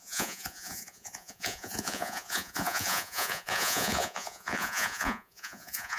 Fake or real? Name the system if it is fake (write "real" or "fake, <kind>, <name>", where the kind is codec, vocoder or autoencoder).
fake, vocoder, Vocos